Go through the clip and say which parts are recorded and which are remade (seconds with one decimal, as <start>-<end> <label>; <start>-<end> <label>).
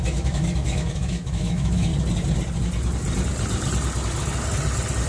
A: 0.0-1.9 remade; 1.9-5.1 recorded